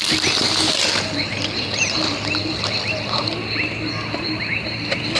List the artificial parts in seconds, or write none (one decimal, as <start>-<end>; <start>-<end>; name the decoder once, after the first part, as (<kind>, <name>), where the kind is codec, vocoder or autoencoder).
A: 2.4-3.1 (vocoder, BigVGAN v2)